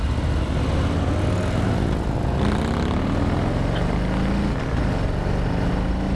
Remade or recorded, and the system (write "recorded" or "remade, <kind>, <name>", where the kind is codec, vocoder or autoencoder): recorded